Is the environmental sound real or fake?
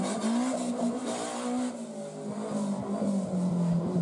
real